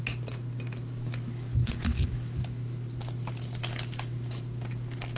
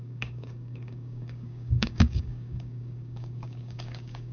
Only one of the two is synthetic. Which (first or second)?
second